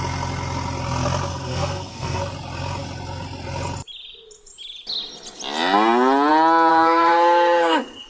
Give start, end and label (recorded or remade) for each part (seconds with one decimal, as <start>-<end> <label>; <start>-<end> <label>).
0.0-1.3 recorded; 1.3-2.2 remade; 2.2-6.7 recorded; 6.7-8.1 remade